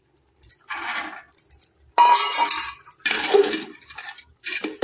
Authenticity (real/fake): fake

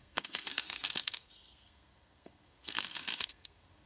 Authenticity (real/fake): fake